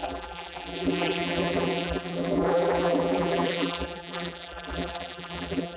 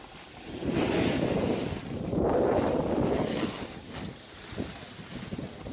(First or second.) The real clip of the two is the second